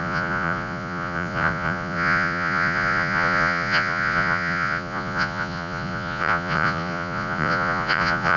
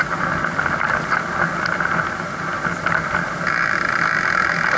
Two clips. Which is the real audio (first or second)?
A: second